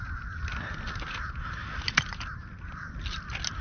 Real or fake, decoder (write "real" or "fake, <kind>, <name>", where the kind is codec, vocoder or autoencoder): fake, vocoder, BigVGAN v2